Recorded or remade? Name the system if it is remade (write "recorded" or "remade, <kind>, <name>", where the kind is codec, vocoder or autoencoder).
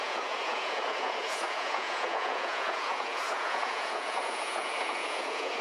remade, vocoder, Vocos